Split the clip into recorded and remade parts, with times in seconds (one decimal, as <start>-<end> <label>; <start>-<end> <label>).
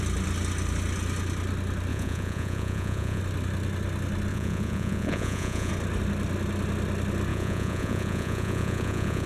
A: 0.0-1.9 recorded; 1.9-3.2 remade; 3.2-4.3 recorded; 4.3-5.7 remade; 5.7-7.3 recorded; 7.3-9.3 remade